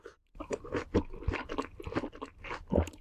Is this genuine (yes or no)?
yes